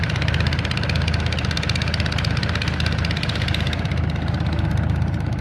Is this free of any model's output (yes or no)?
yes